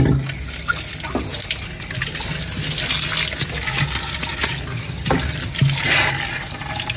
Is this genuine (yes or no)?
yes